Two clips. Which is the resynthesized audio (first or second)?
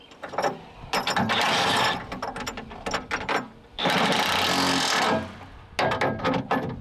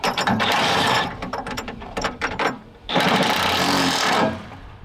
second